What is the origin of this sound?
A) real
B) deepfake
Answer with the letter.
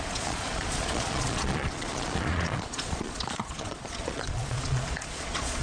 B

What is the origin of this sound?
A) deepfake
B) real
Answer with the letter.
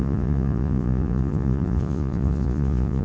A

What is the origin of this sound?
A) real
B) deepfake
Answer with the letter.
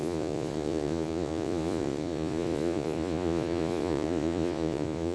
B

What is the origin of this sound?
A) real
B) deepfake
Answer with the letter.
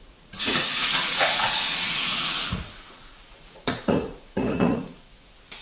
B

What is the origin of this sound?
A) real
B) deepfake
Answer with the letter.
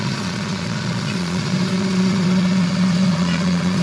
B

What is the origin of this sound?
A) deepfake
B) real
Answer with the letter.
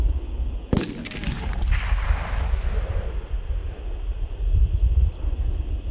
B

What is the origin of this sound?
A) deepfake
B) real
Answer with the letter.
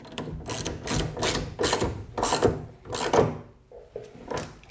B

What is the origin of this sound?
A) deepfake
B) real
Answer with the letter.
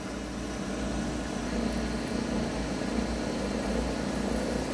B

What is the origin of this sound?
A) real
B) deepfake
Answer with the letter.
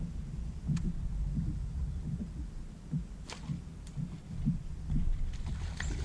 A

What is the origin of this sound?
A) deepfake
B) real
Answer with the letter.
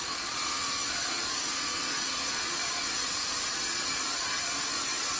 A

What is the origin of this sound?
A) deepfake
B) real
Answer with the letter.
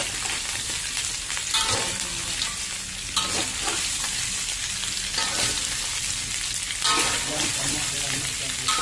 B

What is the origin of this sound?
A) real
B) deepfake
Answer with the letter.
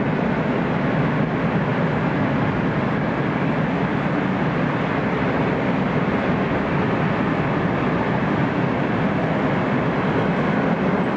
A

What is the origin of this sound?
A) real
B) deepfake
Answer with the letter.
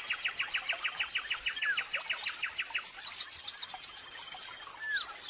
A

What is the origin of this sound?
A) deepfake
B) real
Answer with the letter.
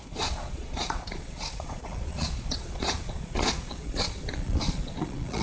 A